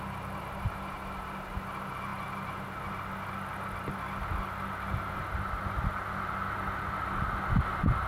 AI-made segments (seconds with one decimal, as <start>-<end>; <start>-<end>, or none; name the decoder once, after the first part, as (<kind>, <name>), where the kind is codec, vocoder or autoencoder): none